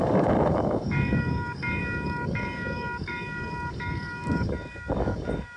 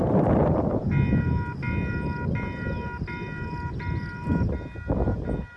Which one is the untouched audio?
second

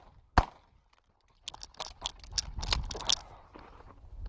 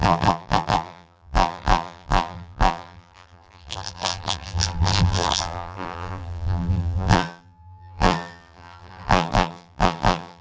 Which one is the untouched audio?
first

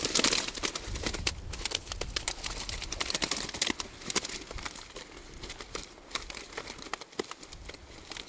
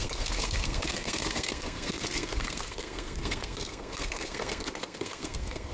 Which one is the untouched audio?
first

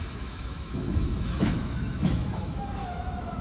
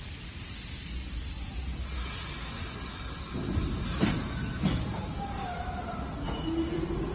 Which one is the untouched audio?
second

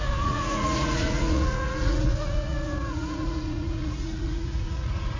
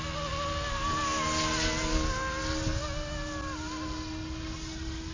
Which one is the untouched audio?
second